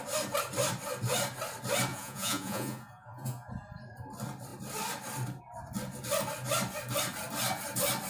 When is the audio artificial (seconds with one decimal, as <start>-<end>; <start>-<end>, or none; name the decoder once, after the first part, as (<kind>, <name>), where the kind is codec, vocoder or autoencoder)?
1.9-3.5 (vocoder, Vocos)